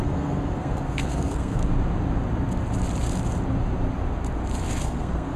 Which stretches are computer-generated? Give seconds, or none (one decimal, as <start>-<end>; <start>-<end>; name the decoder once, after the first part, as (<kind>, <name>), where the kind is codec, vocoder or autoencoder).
0.0-1.6 (codec, SNAC); 4.8-5.4